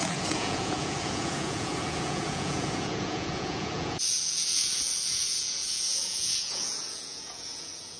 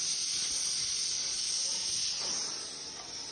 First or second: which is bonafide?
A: second